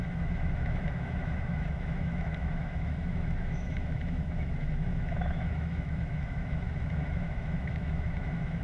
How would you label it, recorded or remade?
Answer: remade